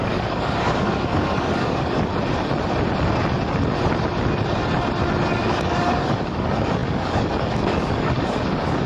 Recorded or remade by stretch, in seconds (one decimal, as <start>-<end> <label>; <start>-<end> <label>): 0.0-2.1 remade; 2.1-5.3 recorded; 5.3-8.9 remade